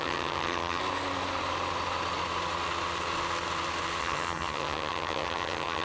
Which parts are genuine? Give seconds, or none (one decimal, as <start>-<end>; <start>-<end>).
0.8-4.0